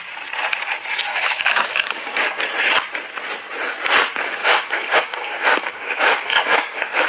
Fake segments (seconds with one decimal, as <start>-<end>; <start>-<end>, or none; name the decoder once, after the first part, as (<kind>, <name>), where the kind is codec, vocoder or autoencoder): 1.1-2.4 (codec, DAC); 4.4-7.1